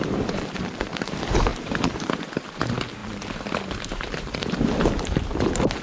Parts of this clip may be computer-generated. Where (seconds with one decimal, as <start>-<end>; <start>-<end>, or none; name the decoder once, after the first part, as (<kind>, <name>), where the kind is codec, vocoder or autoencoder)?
0.0-3.0 (vocoder, BigVGAN v2); 3.8-5.8